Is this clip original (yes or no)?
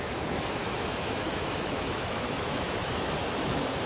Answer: no